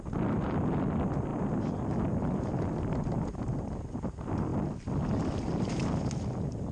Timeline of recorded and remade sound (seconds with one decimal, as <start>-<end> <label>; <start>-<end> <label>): 0.0-1.3 recorded; 1.3-2.0 remade; 2.0-6.7 recorded